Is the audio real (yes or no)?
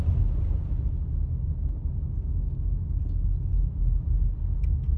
yes